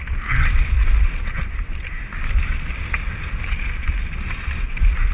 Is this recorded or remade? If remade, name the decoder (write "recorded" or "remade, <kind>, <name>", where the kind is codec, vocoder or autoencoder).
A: recorded